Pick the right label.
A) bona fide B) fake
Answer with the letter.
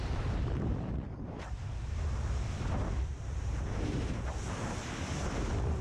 B